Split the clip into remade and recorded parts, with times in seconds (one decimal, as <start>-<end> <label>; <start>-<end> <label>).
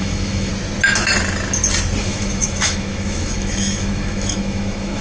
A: 0.0-0.5 remade; 0.5-2.0 recorded; 2.0-5.0 remade